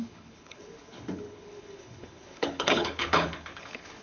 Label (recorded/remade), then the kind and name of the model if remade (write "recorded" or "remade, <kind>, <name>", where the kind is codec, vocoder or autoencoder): remade, codec, HILCodec